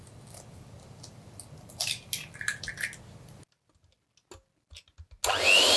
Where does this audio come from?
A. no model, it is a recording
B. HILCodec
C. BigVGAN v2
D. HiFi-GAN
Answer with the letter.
A